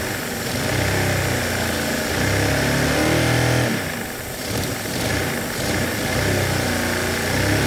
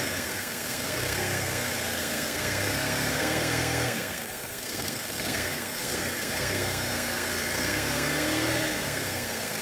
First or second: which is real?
first